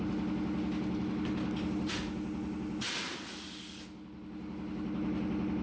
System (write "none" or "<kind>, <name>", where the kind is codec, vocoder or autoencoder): none